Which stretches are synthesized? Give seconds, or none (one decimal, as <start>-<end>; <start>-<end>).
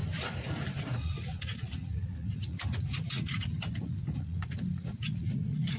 0.8-5.8